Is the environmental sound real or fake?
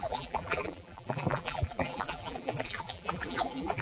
fake